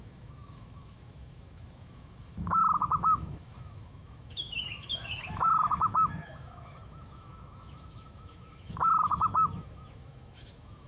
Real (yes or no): no